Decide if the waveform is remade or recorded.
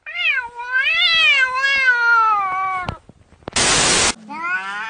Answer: recorded